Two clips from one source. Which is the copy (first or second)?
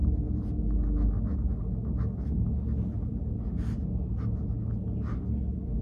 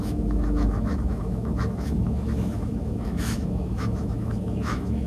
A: second